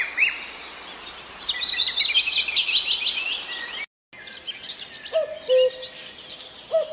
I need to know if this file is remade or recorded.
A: recorded